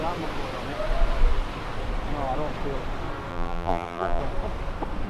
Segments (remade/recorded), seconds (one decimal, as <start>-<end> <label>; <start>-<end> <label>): 0.0-3.3 recorded; 3.3-4.2 remade; 4.2-5.1 recorded